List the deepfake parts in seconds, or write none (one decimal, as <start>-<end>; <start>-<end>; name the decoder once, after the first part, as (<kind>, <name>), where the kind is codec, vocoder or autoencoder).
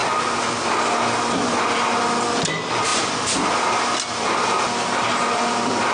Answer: none